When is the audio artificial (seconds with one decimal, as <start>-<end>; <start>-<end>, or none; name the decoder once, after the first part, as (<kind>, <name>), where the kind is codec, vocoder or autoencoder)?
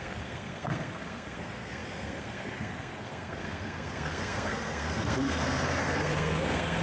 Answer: 0.0-6.8 (codec, SNAC)